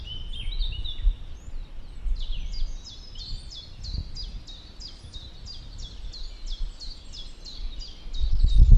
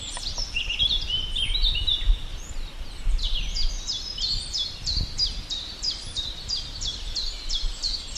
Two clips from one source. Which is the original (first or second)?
first